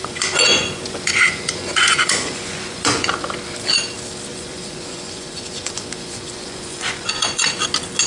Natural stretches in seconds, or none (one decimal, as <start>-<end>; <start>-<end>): 3.1-4.3; 7.5-8.1

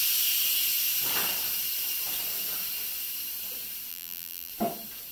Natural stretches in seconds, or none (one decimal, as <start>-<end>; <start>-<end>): 0.0-3.9; 4.5-5.1

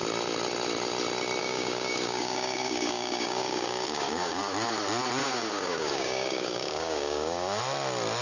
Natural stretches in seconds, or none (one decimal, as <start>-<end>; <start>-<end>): 0.0-1.4; 4.4-5.2; 7.6-8.2

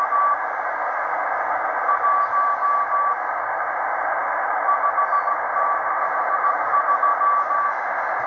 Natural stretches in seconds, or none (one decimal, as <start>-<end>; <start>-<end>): 0.0-8.3

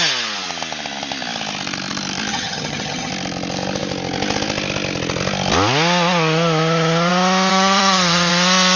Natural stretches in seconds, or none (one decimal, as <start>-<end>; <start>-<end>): 0.0-2.3; 3.1-7.5; 8.3-8.8